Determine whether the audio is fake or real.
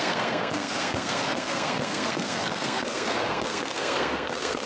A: fake